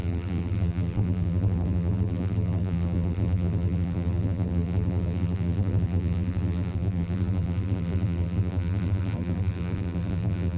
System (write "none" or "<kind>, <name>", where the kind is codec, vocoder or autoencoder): vocoder, BigVGAN v2